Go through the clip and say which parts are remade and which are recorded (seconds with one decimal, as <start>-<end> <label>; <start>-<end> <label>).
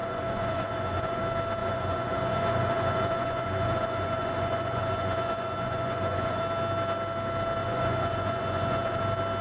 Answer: 0.0-1.2 remade; 1.2-1.6 recorded; 1.6-6.4 remade; 6.4-7.6 recorded; 7.6-9.0 remade; 9.0-9.4 recorded